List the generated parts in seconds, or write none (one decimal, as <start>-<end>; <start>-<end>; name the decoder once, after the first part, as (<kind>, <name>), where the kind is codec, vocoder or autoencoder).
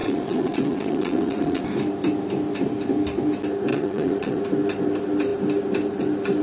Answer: 0.0-1.6 (vocoder, Vocos); 3.7-4.4